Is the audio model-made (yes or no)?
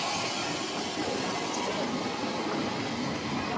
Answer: no